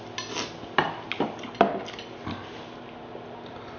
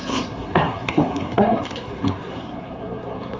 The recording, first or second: first